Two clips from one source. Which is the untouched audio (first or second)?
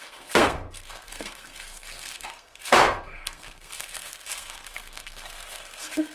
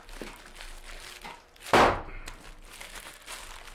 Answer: second